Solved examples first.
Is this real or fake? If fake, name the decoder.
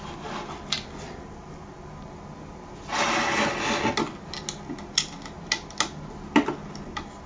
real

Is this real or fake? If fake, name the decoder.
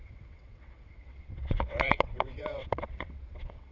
fake, vocoder, WaveNeXt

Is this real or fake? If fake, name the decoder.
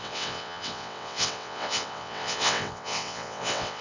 fake, vocoder, WaveNeXt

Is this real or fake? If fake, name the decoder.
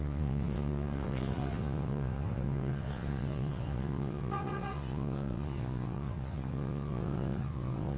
fake, vocoder, WaveNeXt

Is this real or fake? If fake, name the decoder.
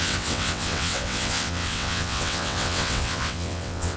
fake, vocoder, WaveNeXt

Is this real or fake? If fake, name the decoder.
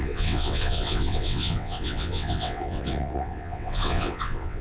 fake, vocoder, WaveNeXt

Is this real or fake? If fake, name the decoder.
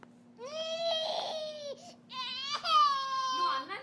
real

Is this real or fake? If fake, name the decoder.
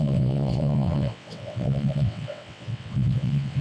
fake, vocoder, WaveNeXt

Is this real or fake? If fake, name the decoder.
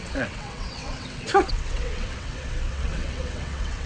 fake, vocoder, WaveNeXt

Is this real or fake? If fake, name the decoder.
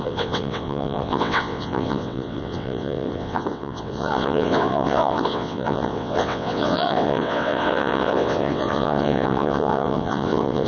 fake, vocoder, WaveNeXt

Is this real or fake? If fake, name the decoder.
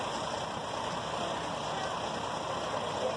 real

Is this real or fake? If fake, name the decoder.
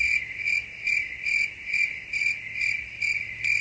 real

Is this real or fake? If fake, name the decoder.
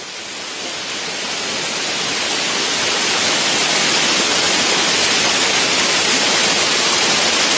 real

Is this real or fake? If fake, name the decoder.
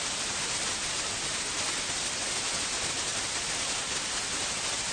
real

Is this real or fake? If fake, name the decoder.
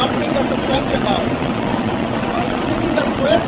fake, vocoder, WaveNeXt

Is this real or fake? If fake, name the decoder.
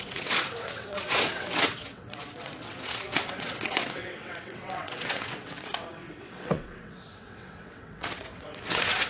fake, vocoder, WaveNeXt